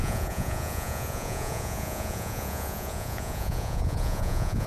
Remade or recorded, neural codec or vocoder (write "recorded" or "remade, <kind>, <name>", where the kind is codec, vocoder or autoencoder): remade, vocoder, Vocos